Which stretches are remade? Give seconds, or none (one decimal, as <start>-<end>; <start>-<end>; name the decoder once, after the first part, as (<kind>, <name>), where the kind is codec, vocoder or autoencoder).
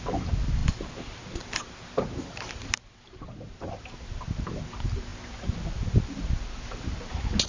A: none